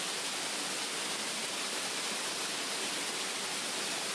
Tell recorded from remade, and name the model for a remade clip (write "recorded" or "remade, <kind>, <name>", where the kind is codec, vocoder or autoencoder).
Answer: recorded